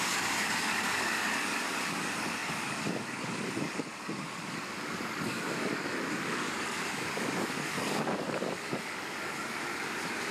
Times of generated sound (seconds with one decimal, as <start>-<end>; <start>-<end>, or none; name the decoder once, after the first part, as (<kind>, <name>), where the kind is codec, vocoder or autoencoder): 0.0-10.3 (codec, DAC)